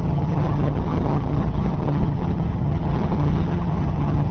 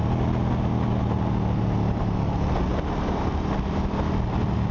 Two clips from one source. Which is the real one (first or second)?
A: second